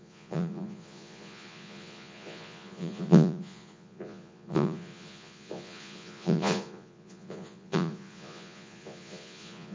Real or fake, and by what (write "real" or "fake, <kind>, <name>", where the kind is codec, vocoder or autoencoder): fake, vocoder, Vocos